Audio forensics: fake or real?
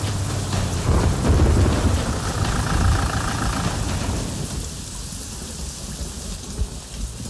real